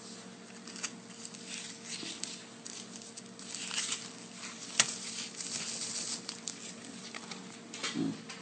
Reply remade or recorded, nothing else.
recorded